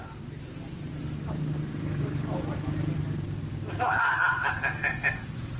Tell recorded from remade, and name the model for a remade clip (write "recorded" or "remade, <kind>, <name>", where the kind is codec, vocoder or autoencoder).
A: recorded